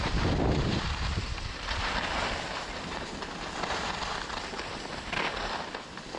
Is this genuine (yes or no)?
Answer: yes